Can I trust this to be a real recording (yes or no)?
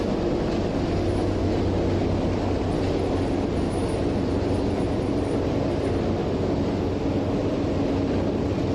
yes